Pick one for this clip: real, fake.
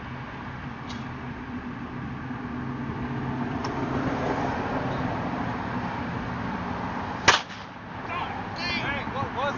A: real